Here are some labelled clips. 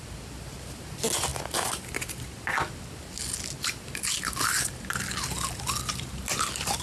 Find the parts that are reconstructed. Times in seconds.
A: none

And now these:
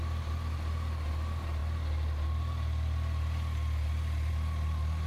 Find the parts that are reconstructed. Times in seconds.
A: none

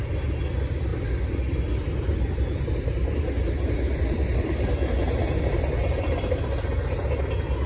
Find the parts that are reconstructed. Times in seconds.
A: none